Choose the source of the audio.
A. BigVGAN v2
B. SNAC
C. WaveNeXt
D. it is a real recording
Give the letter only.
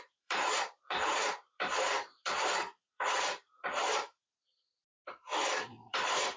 A